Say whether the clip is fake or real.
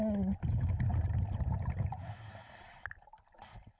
real